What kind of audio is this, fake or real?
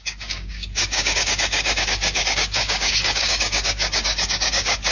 fake